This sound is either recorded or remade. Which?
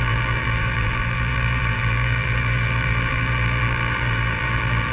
remade